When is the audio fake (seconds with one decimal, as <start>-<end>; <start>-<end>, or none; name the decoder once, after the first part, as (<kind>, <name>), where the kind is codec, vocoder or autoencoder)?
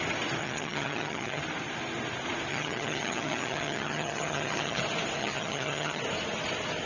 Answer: 0.4-1.4 (vocoder, HiFi-GAN); 2.5-4.8; 5.2-6.0